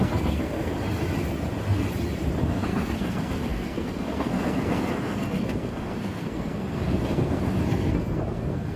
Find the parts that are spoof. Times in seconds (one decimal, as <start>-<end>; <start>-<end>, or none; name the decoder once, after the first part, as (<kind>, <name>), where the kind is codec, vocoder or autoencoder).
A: 0.0-0.7 (codec, SNAC); 2.4-8.8